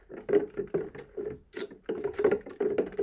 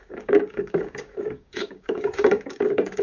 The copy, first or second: second